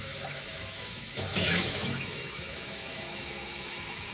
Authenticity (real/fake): fake